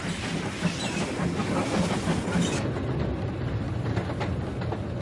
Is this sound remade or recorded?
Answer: recorded